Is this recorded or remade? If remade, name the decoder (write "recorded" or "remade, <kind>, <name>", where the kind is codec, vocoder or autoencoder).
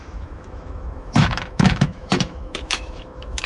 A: remade, autoencoder, DAC-VAE